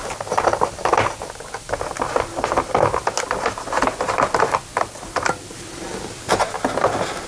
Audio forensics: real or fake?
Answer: real